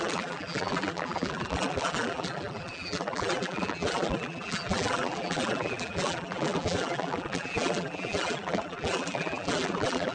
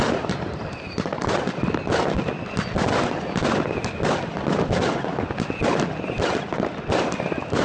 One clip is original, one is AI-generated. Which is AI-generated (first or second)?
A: first